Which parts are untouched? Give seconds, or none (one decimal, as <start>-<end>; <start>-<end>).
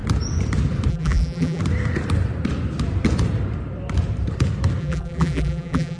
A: 0.0-0.9; 1.6-4.8